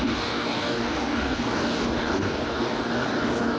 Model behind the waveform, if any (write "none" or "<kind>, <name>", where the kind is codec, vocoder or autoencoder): codec, DAC